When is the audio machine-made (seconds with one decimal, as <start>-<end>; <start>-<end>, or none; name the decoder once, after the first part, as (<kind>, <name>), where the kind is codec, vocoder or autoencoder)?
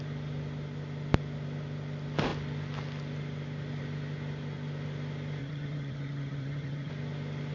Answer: 5.4-6.9 (vocoder, HiFi-GAN)